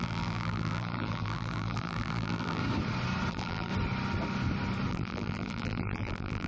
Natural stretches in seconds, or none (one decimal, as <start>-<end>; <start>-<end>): 2.6-3.3; 3.7-4.9

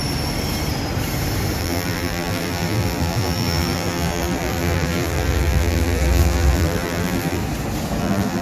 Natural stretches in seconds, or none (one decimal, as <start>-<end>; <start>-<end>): 0.0-1.6; 7.4-8.0

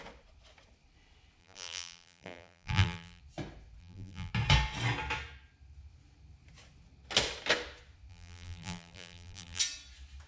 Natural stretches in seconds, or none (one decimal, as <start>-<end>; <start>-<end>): 0.0-1.4; 3.2-3.8; 4.3-8.1; 9.6-10.3

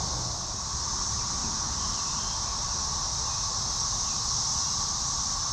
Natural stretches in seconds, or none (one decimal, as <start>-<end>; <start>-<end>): 0.0-5.5